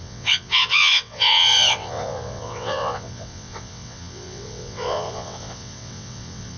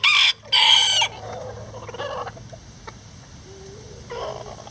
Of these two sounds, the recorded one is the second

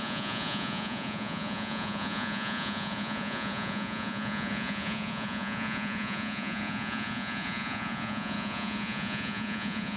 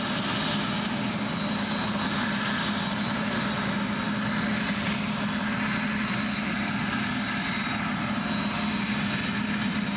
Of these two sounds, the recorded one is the second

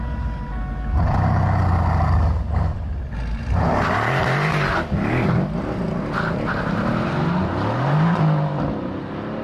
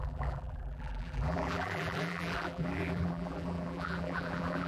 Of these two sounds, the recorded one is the first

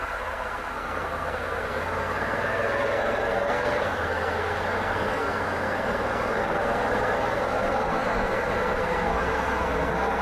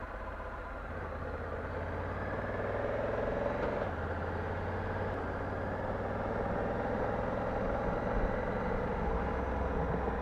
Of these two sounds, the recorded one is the second